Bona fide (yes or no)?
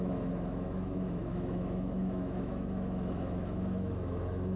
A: no